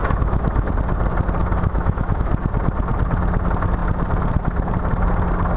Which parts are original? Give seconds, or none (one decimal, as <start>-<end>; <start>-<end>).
0.7-1.4; 2.3-5.6